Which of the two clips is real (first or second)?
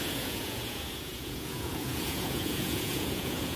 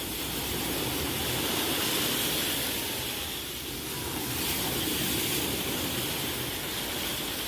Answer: second